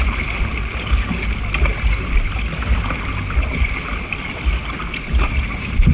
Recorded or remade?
recorded